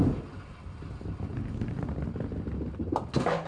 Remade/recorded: recorded